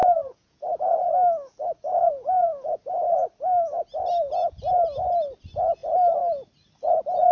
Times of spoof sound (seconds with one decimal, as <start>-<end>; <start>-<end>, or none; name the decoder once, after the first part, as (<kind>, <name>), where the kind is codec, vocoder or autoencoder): 0.0-1.1 (vocoder, Vocos); 2.0-2.8